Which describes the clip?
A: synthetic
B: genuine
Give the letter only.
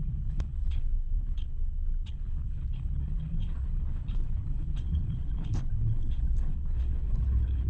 A